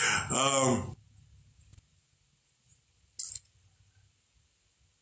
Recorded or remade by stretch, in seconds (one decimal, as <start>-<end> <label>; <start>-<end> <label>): 0.0-5.0 recorded